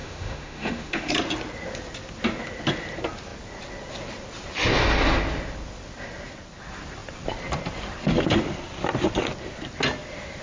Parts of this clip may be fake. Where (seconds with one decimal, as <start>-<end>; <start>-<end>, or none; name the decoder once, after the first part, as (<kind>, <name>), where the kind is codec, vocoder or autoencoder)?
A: 0.0-1.1 (autoencoder, DAC-VAE)